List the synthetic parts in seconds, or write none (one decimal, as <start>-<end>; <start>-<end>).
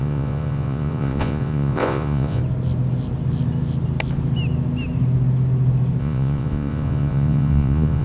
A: 0.0-2.4; 6.0-8.0